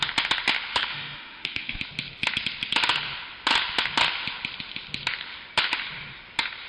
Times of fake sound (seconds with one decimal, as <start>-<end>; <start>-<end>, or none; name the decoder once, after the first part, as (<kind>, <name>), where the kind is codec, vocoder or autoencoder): 0.7-1.8 (autoencoder, DAC-VAE)